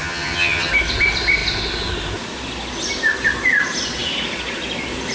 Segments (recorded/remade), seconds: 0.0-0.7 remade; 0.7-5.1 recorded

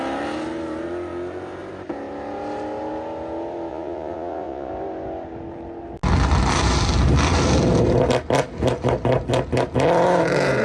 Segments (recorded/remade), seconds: 0.0-3.7 recorded; 3.7-4.7 remade; 4.7-10.6 recorded

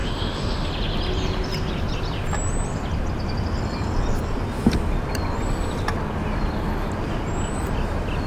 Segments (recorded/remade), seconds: 0.0-0.7 remade; 0.7-8.3 recorded

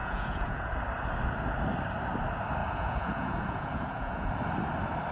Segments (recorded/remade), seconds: 0.0-0.7 remade; 0.7-2.6 recorded; 2.6-4.3 remade; 4.3-5.1 recorded

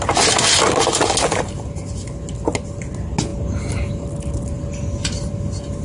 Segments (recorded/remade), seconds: 0.0-5.8 recorded

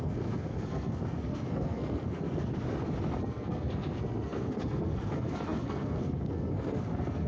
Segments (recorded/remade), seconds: 0.0-2.5 remade; 2.5-3.2 recorded; 3.2-7.3 remade

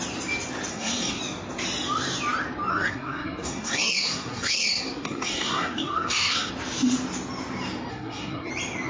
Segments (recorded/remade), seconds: 0.0-0.7 recorded; 0.7-1.2 remade; 1.2-2.7 recorded; 2.7-6.5 remade; 6.5-7.9 recorded; 7.9-8.5 remade; 8.5-8.9 recorded

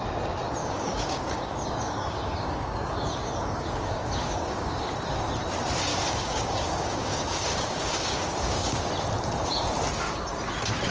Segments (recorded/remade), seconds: 0.0-0.6 recorded; 0.6-4.9 remade; 4.9-5.9 recorded; 5.9-8.9 remade; 8.9-10.9 recorded